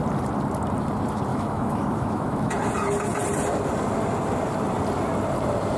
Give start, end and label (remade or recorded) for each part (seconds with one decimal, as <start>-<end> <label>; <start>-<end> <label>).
0.0-1.3 recorded; 1.3-2.5 remade; 2.5-5.8 recorded